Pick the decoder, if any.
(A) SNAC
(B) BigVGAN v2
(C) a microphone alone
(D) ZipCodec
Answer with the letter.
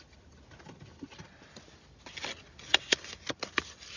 C